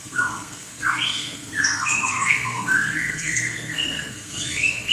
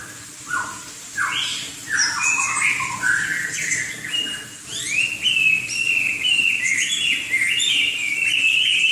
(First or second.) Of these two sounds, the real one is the second